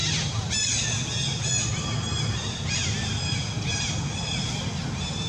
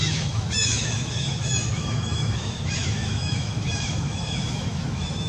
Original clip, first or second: first